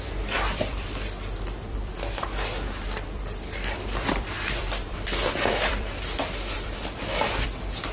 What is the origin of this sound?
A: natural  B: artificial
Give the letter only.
B